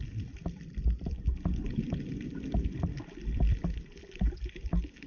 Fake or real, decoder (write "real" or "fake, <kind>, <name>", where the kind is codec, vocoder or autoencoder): real